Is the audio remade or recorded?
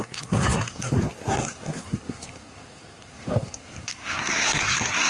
remade